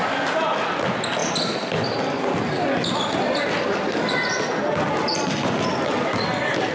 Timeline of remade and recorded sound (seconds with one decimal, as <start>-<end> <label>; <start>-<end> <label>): 0.0-6.7 recorded